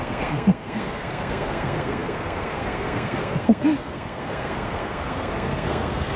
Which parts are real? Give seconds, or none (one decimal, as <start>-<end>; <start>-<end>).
none